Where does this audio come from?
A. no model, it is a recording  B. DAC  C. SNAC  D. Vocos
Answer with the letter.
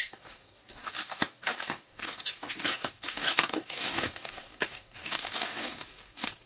B